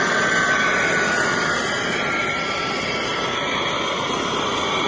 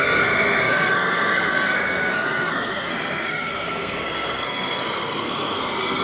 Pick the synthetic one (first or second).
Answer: second